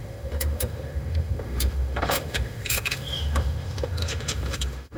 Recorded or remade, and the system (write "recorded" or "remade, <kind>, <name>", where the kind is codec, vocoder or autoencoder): remade, autoencoder, DAC-VAE